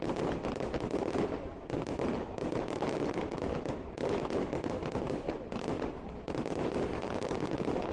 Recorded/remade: recorded